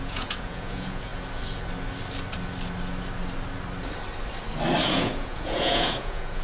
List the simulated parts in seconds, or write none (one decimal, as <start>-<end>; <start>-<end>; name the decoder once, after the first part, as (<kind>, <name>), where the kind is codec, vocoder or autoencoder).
0.0-1.1 (vocoder, Vocos); 4.9-6.4